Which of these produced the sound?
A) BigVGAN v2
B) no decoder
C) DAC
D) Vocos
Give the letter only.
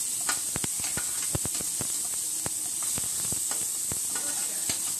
B